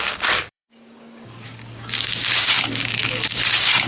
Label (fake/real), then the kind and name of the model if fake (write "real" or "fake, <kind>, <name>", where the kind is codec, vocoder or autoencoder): fake, codec, DAC